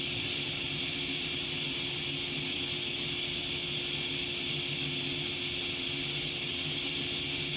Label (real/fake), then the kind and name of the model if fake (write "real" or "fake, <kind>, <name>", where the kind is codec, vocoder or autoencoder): real